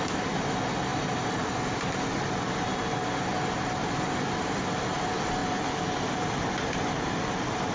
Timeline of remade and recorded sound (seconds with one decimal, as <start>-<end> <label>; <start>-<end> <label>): 0.0-7.7 recorded